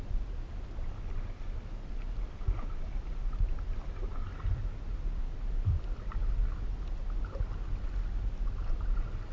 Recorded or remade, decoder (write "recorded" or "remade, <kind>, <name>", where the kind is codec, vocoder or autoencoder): recorded